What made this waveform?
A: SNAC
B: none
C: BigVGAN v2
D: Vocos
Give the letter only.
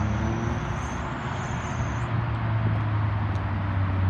B